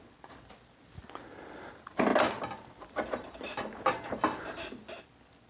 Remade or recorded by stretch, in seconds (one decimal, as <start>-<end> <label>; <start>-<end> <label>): 0.0-5.5 recorded